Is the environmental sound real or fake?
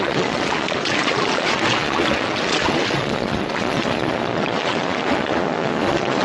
fake